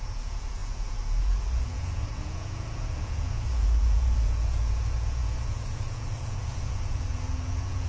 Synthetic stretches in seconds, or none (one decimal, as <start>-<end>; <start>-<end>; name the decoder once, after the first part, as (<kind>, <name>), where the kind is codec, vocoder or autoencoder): 0.0-7.9 (vocoder, Vocos)